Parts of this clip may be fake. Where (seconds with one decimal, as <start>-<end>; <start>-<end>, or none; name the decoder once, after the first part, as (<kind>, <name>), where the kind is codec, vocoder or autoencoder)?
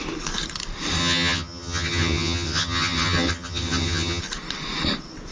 1.0-4.2 (vocoder, HiFi-GAN)